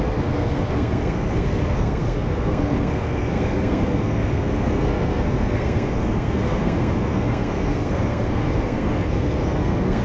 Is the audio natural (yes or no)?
no